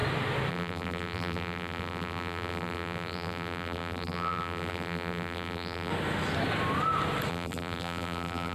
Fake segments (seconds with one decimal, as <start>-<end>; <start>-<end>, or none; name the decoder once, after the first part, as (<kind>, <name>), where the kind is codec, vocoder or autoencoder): 0.5-5.9 (vocoder, BigVGAN v2); 7.3-8.5